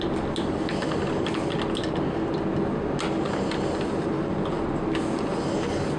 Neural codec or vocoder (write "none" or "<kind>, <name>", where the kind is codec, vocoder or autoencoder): none